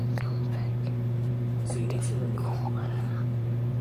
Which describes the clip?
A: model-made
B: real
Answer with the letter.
A